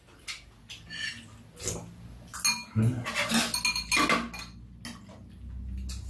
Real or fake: real